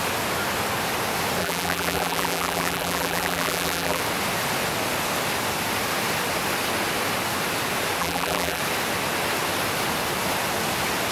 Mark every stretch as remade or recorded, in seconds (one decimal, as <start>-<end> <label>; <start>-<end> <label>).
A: 0.0-1.4 recorded; 1.4-4.0 remade; 4.0-8.0 recorded; 8.0-8.6 remade; 8.6-11.1 recorded